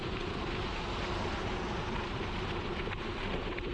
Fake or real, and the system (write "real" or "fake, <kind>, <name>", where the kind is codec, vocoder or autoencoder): real